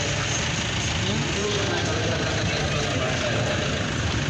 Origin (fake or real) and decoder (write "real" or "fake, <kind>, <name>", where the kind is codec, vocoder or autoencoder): real